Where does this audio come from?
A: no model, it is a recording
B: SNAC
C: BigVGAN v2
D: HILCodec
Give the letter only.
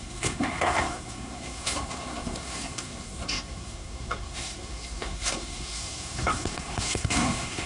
B